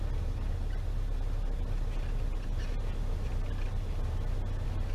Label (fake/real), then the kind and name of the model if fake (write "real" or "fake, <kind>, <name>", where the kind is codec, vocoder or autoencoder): real